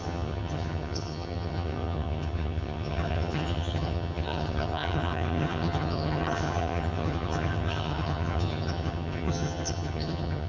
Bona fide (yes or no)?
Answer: no